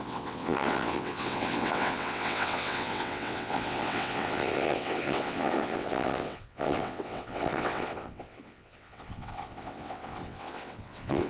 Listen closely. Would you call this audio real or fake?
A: fake